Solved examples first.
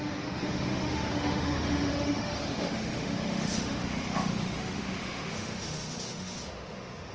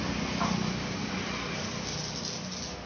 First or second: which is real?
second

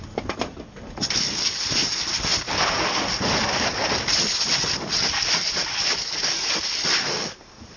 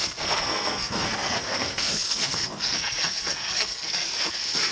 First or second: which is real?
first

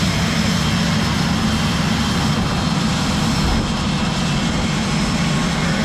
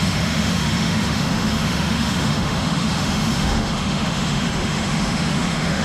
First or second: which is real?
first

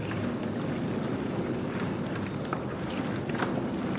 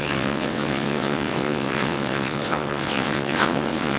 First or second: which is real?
first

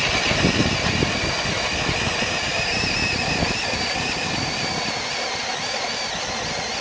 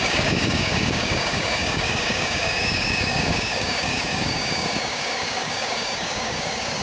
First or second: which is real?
first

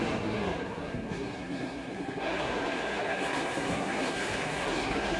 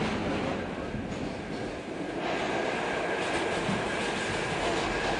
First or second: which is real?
second